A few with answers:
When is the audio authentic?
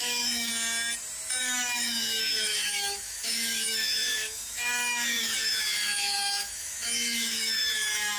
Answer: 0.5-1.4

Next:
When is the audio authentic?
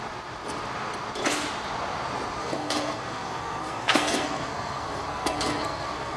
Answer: 0.0-2.4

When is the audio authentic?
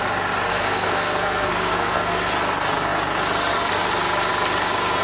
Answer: 0.0-0.5; 2.3-5.0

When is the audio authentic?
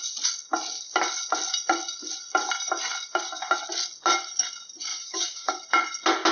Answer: 0.0-4.9; 5.5-6.3